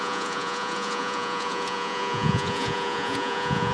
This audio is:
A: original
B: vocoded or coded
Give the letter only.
B